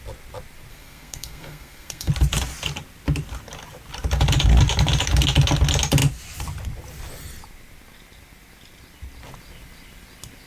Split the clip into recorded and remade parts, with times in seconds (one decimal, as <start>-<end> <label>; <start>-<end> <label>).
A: 0.0-0.7 recorded; 0.7-2.1 remade; 2.1-10.5 recorded